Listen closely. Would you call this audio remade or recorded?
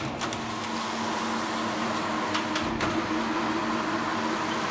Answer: recorded